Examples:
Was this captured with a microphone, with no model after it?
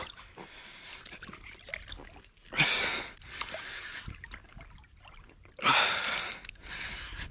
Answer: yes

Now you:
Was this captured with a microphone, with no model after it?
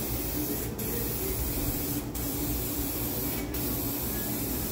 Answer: no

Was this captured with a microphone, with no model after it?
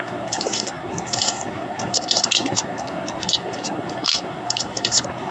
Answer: no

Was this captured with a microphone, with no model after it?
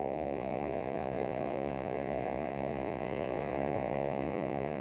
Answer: no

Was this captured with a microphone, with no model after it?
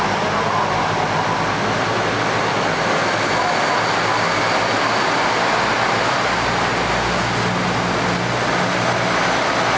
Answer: yes